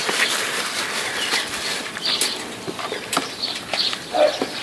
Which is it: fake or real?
fake